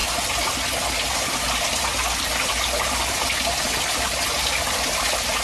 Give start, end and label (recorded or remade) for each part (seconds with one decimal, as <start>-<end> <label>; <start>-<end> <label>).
0.0-5.4 recorded